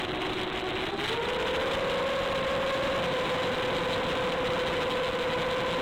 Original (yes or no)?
yes